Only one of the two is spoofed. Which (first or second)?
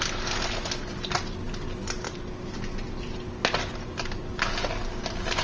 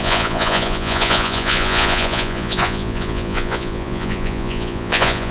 second